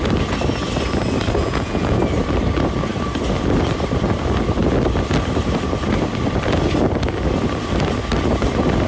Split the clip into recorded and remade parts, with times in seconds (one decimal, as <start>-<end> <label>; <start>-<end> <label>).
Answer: 0.0-1.4 recorded; 1.4-2.0 remade; 2.0-8.9 recorded